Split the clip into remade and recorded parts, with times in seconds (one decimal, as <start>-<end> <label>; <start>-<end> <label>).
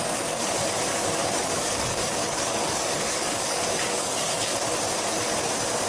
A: 0.0-0.9 recorded; 0.9-4.4 remade; 4.4-5.9 recorded